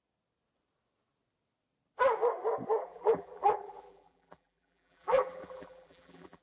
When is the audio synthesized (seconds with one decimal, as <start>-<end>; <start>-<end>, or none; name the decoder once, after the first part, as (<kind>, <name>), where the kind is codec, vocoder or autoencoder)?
2.8-6.4 (vocoder, BigVGAN v2)